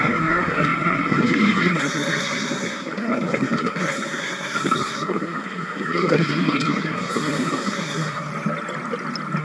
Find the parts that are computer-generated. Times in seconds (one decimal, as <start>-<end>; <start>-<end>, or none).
0.0-8.3